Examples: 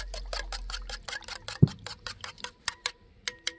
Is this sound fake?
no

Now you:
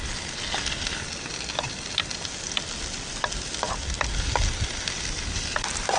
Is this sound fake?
no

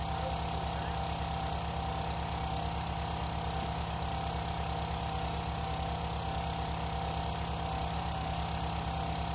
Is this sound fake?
no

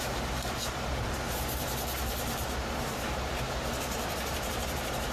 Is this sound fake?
yes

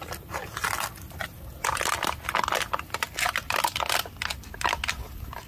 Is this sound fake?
no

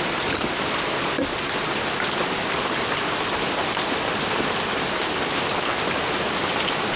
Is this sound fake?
no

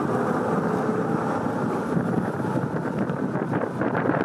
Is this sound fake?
no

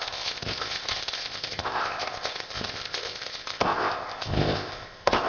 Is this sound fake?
yes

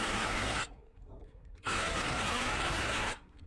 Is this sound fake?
yes